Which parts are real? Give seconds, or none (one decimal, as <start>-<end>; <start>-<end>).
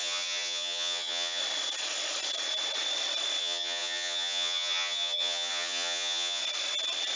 1.4-3.4; 6.4-7.2